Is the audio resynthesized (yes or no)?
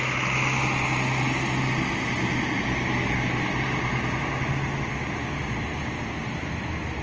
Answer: no